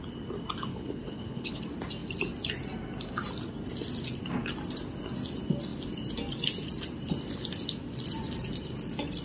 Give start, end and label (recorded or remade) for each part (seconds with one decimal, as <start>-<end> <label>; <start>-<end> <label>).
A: 0.0-0.7 recorded; 0.7-1.6 remade; 1.6-9.2 recorded